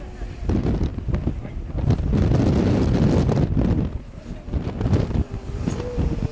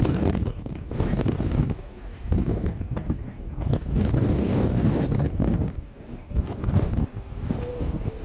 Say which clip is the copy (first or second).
second